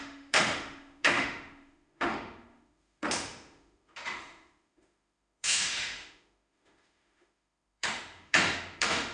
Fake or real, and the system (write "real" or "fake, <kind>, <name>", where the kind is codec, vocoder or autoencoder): fake, autoencoder, DAC-VAE